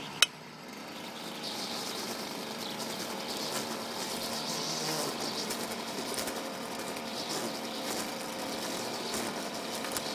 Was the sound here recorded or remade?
recorded